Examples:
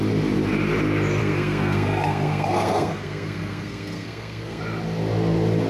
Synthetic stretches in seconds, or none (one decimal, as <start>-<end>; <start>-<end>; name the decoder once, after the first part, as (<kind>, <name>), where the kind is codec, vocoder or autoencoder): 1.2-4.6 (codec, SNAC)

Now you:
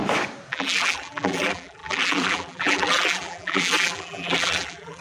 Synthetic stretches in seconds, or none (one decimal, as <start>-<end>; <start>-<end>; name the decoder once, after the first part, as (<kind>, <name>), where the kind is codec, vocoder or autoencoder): 0.5-5.0 (vocoder, BigVGAN v2)

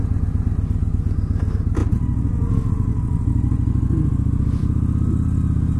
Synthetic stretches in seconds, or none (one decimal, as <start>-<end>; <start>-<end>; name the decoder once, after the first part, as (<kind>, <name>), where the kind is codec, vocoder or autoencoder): none

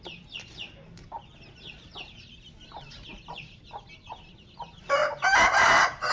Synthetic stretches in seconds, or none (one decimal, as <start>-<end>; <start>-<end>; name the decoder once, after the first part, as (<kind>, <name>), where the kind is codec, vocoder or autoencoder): 0.0-5.0 (vocoder, BigVGAN v2)

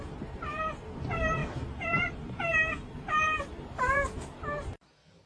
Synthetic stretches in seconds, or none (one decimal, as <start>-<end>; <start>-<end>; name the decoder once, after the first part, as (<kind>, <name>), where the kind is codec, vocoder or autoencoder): 1.4-2.1 (vocoder, BigVGAN v2); 2.5-3.1

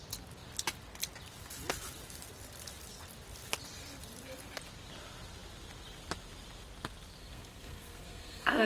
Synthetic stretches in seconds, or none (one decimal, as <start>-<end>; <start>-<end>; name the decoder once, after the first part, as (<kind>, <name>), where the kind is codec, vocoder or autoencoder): 7.2-8.7 (codec, SNAC)

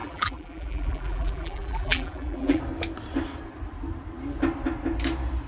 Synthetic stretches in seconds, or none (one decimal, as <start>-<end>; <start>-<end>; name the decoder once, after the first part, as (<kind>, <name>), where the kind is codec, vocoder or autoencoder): 0.0-2.6 (vocoder, BigVGAN v2)

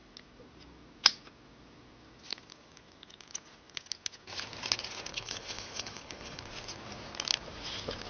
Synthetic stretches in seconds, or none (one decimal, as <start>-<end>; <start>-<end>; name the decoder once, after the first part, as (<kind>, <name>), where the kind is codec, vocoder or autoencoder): 5.1-6.4 (codec, HILCodec)